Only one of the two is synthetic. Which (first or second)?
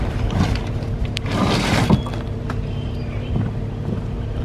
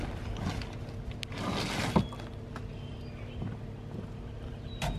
first